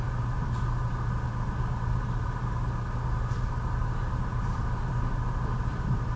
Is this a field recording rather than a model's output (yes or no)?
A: yes